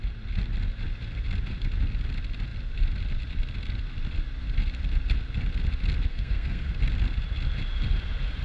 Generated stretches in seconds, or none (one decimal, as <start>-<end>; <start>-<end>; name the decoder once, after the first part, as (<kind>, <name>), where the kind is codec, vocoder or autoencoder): 6.1-6.7 (codec, SNAC)